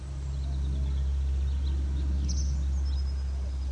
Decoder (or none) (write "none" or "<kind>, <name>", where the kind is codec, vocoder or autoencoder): none